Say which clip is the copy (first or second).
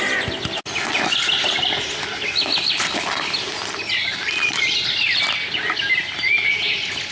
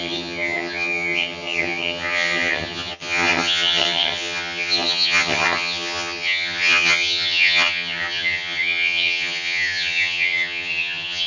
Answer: second